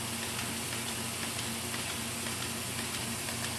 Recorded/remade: recorded